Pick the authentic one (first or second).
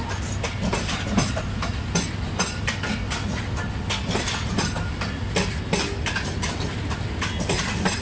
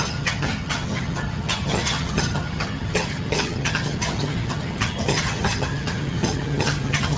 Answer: first